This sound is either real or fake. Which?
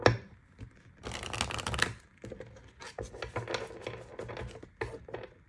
real